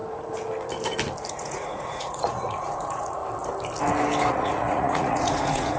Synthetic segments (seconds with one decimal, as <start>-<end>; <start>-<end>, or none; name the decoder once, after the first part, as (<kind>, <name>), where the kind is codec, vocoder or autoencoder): 1.3-3.2 (vocoder, Vocos); 4.3-5.8